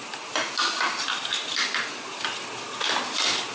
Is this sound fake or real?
real